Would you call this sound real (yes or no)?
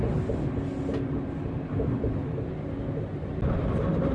yes